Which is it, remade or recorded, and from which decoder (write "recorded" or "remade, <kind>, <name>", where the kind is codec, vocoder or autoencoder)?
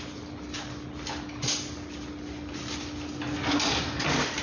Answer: recorded